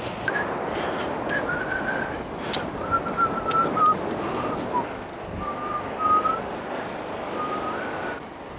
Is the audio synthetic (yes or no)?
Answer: no